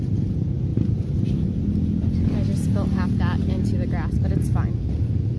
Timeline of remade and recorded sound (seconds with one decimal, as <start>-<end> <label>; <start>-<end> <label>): 0.0-0.7 recorded; 0.7-1.6 remade; 1.6-5.4 recorded